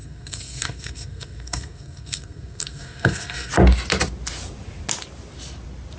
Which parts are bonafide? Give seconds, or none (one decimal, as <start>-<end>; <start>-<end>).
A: 3.5-6.0